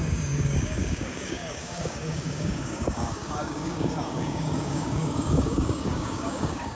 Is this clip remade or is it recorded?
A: remade